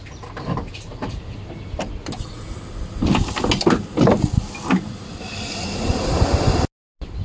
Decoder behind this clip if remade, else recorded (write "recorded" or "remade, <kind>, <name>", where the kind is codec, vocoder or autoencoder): recorded